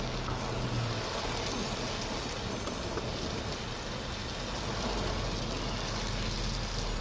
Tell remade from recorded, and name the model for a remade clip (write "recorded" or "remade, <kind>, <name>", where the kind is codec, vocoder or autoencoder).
recorded